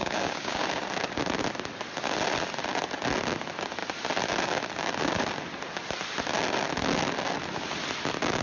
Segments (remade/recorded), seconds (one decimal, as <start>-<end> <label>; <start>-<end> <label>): 0.0-0.6 remade; 0.6-8.4 recorded